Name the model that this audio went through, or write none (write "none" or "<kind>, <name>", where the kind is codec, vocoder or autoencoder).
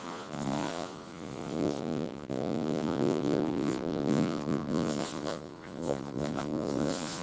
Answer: vocoder, Vocos